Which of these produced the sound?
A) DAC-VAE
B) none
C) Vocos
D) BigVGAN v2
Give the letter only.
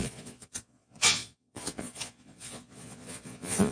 C